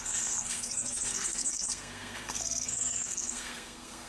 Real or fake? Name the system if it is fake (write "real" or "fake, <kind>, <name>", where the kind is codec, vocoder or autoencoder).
fake, codec, SNAC